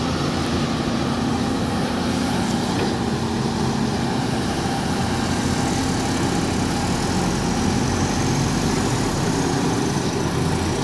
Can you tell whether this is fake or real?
real